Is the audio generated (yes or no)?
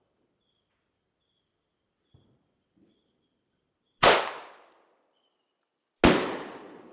no